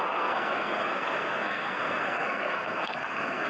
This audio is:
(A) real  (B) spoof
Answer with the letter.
B